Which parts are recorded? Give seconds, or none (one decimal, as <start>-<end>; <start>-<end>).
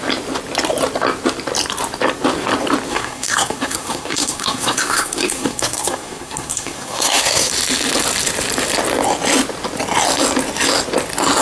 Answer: 0.0-2.9; 7.5-11.4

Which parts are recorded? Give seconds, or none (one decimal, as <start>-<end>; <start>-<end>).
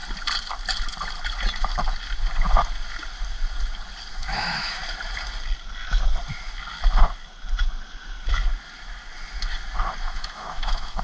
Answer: 0.0-4.1; 4.8-10.0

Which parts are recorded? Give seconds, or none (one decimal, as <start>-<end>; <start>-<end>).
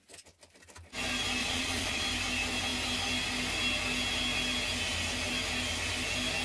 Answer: 0.0-1.4; 2.0-6.4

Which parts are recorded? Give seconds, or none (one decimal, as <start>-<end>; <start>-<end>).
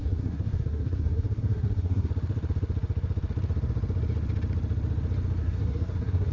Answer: 2.1-5.4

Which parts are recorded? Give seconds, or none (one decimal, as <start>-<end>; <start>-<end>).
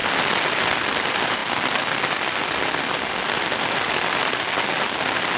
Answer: 0.0-5.4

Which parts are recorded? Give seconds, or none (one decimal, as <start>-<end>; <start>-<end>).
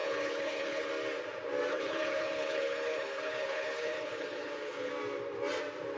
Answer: 0.9-1.7; 4.9-6.0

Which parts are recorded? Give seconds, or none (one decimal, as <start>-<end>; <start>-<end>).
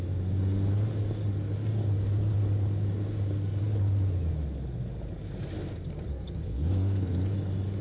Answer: 0.0-6.1; 7.1-7.8